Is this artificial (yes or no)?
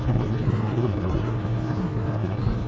yes